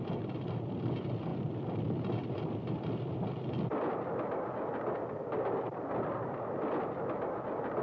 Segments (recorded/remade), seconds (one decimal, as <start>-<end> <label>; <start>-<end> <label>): 0.0-7.8 recorded